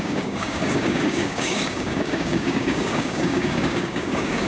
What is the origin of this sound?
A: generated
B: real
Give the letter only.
A